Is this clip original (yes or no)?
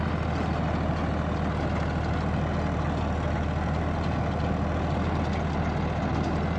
yes